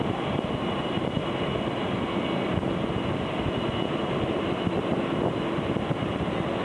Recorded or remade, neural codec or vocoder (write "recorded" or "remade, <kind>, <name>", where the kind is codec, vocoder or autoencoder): recorded